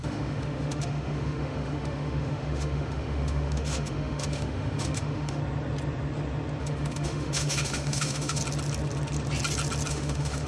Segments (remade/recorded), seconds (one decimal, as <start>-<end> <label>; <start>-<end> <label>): 0.0-5.4 remade; 5.4-6.6 recorded; 6.6-8.4 remade; 8.4-9.9 recorded; 9.9-10.5 remade